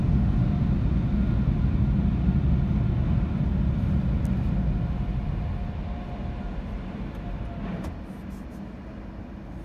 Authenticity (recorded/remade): recorded